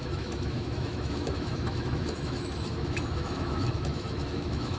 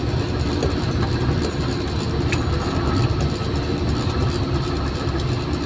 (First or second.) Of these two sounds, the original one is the second